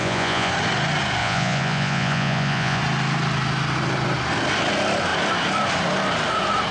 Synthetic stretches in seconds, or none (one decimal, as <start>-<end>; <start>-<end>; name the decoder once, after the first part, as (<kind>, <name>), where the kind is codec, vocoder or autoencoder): 0.0-0.5 (vocoder, Vocos); 1.2-2.8